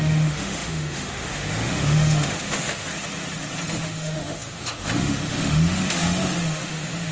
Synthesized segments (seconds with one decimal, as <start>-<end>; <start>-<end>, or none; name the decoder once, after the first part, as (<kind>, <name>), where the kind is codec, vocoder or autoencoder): 0.0-2.9 (autoencoder, DAC-VAE); 3.7-7.1